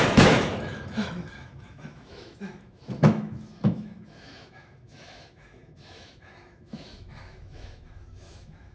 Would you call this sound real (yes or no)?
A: no